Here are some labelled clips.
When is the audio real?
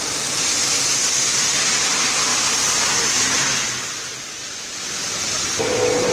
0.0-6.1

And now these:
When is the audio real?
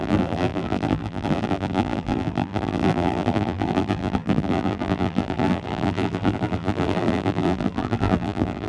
none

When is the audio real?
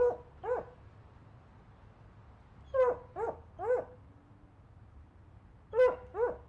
0.0-6.5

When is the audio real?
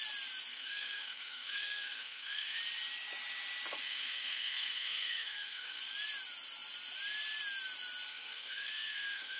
0.0-0.5; 2.6-3.8; 5.8-8.1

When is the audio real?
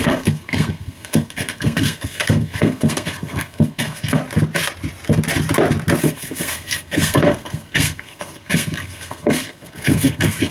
4.2-6.0